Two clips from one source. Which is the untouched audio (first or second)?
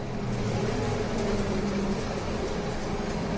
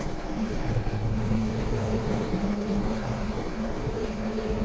first